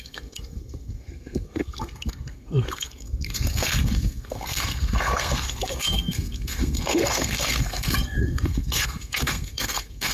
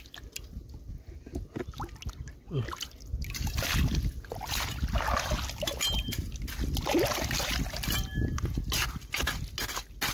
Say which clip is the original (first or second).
second